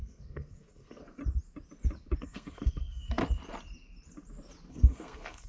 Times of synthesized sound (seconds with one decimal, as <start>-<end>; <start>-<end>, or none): 0.0-1.2; 2.2-3.2; 4.7-5.5